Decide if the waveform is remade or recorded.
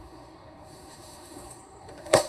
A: remade